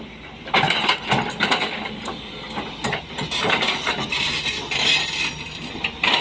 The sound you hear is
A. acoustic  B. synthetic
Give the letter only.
B